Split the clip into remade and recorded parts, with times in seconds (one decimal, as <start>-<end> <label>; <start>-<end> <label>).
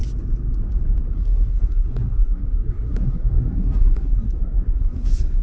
0.0-1.1 recorded; 1.1-5.4 remade